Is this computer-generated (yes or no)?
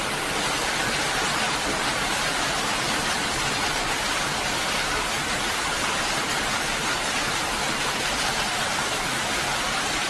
yes